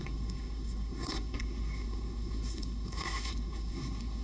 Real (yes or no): no